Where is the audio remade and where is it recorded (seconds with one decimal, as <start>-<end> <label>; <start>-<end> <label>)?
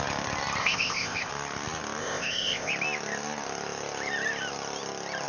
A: 0.0-0.6 recorded; 0.6-1.3 remade; 1.3-2.0 recorded; 2.0-2.7 remade; 2.7-5.3 recorded